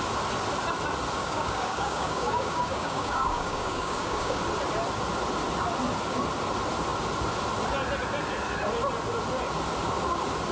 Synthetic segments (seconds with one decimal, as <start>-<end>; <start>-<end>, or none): 1.2-4.4